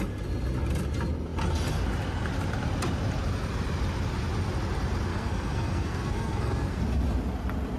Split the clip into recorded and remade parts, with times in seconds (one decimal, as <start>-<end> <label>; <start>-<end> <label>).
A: 0.0-5.1 recorded; 5.1-6.8 remade; 6.8-7.8 recorded